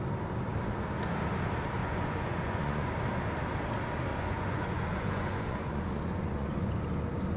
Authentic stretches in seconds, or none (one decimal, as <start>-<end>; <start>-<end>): 0.0-1.8; 2.9-4.1; 6.7-7.4